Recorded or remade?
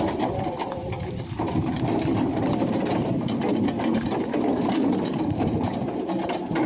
remade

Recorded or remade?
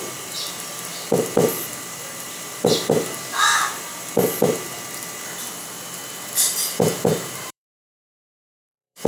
remade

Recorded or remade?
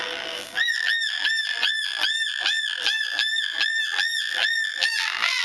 remade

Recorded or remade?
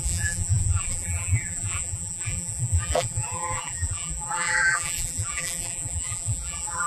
remade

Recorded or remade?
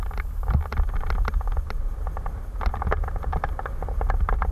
recorded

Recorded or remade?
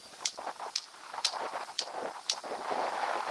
recorded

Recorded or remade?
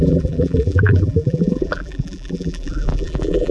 remade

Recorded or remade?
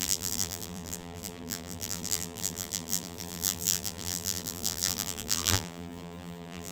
remade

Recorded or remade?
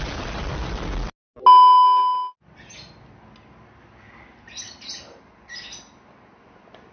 recorded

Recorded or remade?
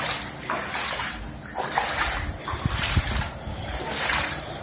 remade